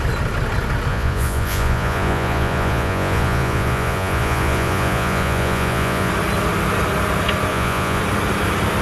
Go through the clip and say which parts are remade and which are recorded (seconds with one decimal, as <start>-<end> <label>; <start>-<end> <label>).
0.0-0.9 recorded; 0.9-6.1 remade; 6.1-7.5 recorded; 7.5-8.0 remade; 8.0-8.8 recorded